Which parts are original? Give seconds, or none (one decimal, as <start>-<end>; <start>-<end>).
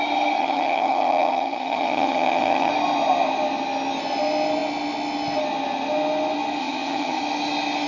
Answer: 0.0-0.4; 2.7-6.6; 7.2-7.9